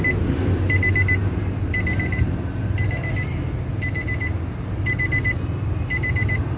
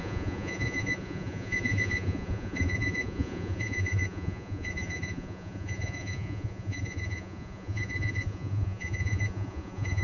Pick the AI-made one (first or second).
second